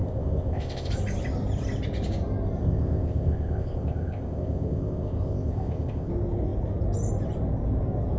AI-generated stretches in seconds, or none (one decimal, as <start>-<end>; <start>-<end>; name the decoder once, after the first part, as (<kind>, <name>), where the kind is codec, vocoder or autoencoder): 0.0-0.9 (codec, ZipCodec); 2.6-6.1